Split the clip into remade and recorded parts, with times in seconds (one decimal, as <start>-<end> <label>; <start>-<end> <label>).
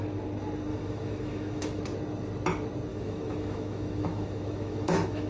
0.0-0.7 recorded; 0.7-1.8 remade; 1.8-2.9 recorded; 2.9-5.3 remade